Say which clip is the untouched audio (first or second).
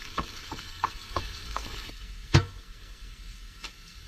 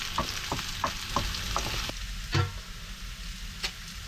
second